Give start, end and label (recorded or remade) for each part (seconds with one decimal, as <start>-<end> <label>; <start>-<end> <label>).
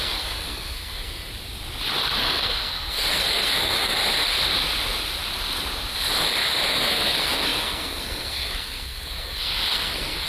0.0-1.3 remade; 1.3-2.2 recorded; 2.2-4.0 remade; 4.0-6.7 recorded; 6.7-10.3 remade